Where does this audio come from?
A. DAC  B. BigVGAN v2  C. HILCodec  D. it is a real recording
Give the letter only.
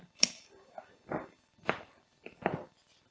D